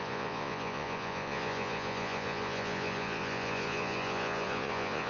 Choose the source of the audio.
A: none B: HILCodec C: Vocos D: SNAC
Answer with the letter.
C